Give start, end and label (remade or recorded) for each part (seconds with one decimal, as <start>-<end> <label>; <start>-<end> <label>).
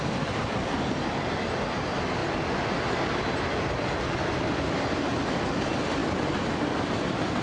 0.0-7.4 recorded